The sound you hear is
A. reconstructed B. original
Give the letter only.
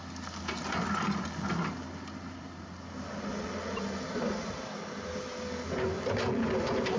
B